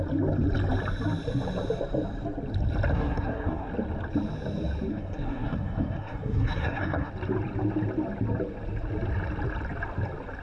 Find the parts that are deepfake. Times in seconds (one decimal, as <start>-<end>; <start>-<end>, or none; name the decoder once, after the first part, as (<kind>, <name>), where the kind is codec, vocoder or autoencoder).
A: 2.9-3.7 (codec, SNAC); 4.9-7.1